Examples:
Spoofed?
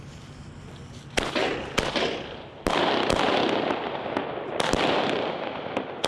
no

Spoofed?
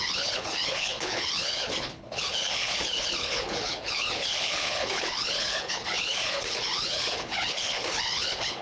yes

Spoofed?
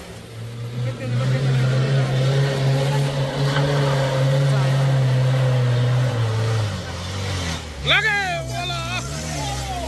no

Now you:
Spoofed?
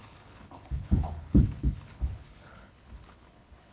yes